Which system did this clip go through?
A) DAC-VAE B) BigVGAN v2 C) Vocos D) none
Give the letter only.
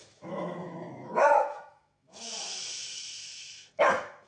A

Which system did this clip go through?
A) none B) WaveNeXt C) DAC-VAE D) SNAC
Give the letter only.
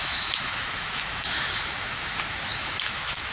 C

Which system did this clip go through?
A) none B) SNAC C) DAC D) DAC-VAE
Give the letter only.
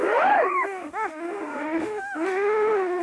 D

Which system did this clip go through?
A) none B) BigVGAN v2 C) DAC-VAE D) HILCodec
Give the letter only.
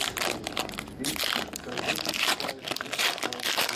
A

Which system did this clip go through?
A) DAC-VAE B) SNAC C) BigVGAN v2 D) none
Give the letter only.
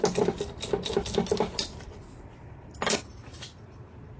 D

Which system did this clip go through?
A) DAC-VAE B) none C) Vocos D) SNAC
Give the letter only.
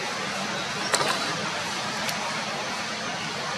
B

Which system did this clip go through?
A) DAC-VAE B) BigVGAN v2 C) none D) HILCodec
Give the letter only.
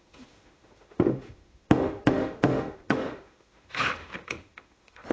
A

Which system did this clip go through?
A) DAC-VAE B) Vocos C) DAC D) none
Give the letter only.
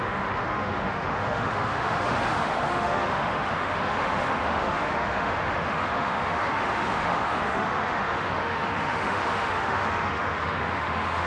A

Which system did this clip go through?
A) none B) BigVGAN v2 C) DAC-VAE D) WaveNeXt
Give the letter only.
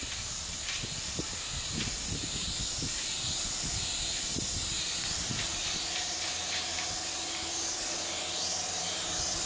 A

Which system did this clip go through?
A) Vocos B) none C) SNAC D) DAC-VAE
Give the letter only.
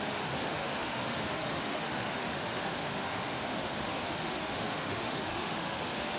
D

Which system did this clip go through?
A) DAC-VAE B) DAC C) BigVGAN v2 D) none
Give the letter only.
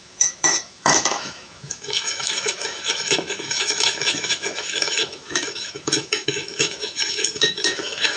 A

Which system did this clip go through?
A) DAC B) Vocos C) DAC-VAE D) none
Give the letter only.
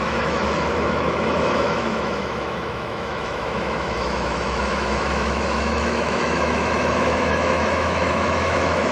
C